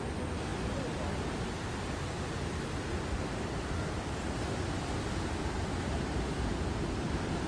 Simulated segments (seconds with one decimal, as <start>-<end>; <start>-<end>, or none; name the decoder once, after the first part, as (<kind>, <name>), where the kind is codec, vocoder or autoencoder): none